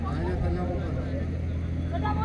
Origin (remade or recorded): recorded